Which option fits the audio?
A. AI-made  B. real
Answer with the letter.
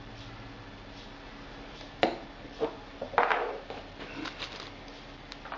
B